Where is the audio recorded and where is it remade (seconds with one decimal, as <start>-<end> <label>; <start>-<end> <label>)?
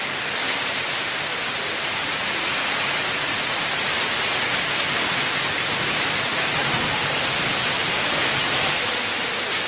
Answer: 0.0-2.0 recorded; 2.0-4.6 remade; 4.6-6.3 recorded; 6.3-6.9 remade; 6.9-9.7 recorded